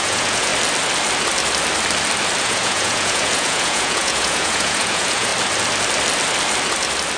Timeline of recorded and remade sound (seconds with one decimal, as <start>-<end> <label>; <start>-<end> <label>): 0.0-0.5 remade; 0.5-2.4 recorded; 2.4-5.3 remade; 5.3-7.2 recorded